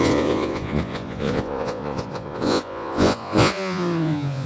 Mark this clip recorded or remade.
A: remade